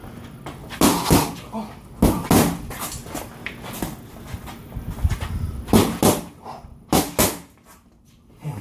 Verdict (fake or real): real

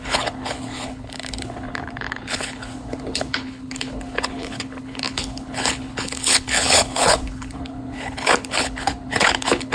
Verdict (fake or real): fake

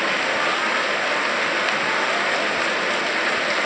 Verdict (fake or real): real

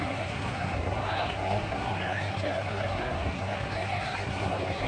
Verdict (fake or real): fake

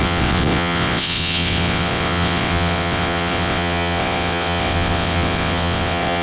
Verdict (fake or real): fake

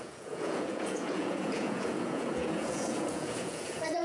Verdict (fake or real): fake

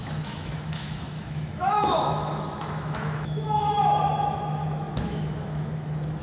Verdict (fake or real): fake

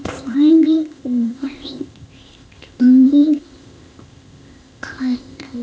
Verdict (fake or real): fake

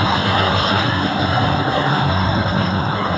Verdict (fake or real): fake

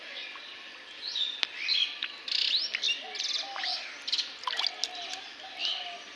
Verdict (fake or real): real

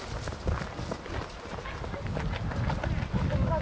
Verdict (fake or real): real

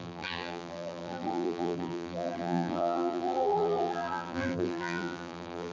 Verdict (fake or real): fake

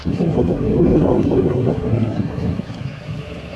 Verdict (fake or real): fake